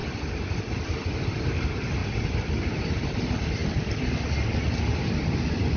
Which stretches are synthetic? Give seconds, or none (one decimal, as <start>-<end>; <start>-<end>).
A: 0.0-1.1; 2.0-2.9